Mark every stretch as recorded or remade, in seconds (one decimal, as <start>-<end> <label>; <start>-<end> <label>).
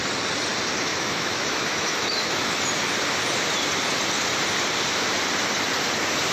0.0-0.9 recorded; 0.9-2.6 remade; 2.6-6.3 recorded